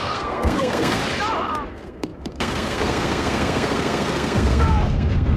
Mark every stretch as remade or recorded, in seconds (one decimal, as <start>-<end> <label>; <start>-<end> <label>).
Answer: 0.0-1.0 remade; 1.0-1.7 recorded; 1.7-5.4 remade